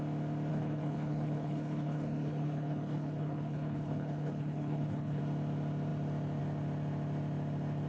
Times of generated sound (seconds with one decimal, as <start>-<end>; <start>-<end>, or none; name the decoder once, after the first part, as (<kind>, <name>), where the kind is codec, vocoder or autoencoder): 0.5-5.2 (codec, HILCodec)